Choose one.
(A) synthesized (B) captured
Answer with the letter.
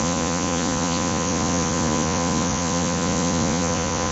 A